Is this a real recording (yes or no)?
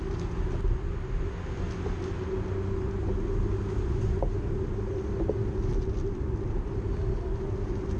yes